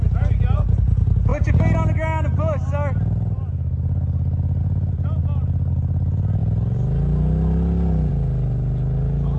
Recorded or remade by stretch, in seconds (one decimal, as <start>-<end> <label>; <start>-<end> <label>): 0.0-9.4 recorded